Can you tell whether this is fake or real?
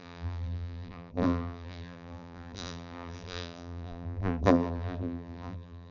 fake